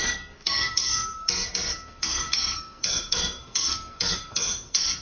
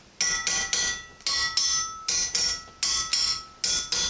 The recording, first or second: second